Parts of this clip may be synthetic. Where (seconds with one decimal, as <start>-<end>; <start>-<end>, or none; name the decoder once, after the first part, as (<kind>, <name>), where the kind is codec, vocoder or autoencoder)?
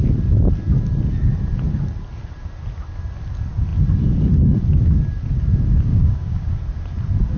5.9-6.5 (codec, DAC)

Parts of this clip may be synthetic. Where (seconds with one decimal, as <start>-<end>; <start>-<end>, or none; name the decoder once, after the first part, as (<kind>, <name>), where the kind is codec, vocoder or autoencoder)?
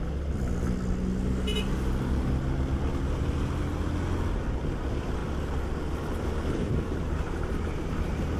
none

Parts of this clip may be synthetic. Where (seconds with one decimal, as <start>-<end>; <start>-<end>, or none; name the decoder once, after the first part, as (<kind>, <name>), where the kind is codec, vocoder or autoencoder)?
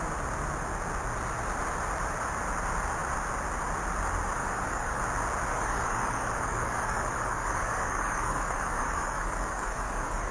4.4-5.0 (codec, DAC); 5.5-10.3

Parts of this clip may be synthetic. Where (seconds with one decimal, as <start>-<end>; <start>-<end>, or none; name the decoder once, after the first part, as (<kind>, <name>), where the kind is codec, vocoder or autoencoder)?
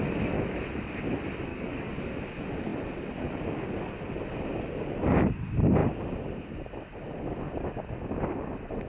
1.5-2.1 (codec, DAC)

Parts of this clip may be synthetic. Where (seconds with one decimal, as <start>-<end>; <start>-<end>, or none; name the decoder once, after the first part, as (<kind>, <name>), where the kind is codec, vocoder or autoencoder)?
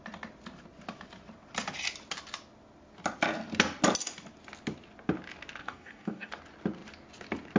5.6-6.3 (codec, DAC)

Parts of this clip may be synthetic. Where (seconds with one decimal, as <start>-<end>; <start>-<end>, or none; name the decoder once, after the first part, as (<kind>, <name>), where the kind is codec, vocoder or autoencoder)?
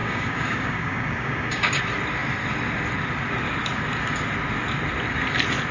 0.0-1.8 (codec, DAC)